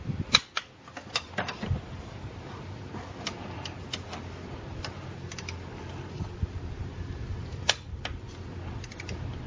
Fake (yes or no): no